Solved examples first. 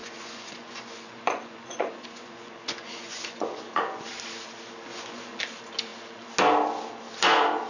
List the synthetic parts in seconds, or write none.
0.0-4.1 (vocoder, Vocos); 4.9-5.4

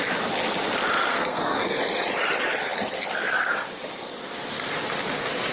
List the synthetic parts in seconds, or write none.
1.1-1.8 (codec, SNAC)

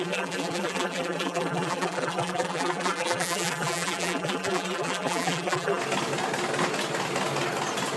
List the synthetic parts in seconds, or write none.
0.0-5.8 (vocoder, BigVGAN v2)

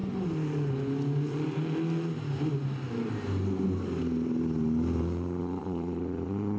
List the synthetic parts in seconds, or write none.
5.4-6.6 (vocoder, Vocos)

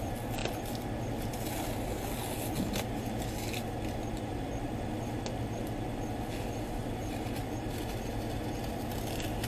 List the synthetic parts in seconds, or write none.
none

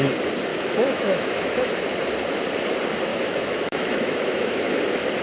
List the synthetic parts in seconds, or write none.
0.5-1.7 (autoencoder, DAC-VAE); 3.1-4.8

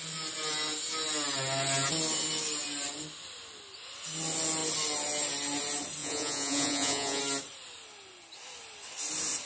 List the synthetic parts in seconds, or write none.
6.0-7.2 (vocoder, Vocos)